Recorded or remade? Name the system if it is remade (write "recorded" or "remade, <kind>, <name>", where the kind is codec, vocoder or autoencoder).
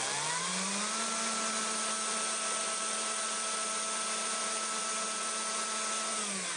recorded